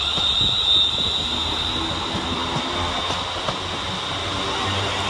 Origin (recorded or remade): recorded